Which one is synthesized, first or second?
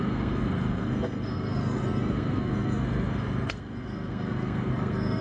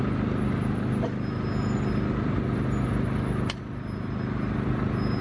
first